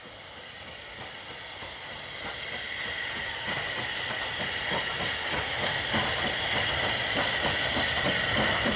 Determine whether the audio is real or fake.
real